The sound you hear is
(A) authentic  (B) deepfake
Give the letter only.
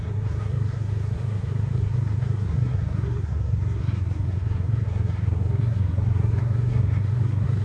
B